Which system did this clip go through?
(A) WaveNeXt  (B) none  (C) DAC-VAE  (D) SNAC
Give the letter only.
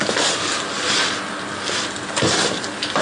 B